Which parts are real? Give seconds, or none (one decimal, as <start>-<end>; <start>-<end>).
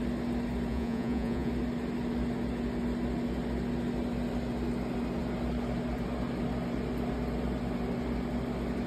0.0-0.7; 1.5-8.9